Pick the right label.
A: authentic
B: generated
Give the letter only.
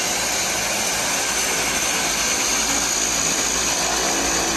A